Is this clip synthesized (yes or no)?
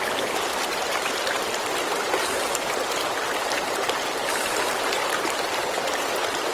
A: no